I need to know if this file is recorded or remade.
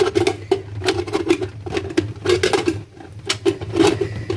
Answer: recorded